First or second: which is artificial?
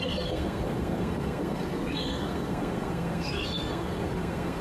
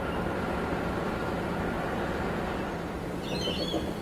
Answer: first